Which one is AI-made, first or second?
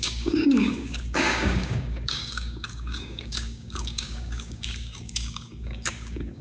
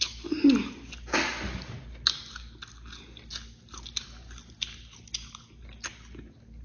first